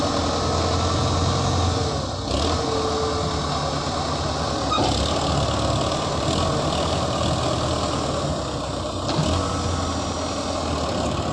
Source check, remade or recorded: recorded